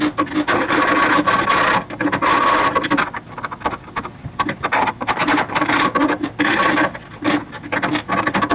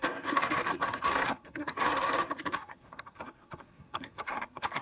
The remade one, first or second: second